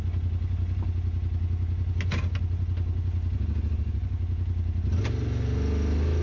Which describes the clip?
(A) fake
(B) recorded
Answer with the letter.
B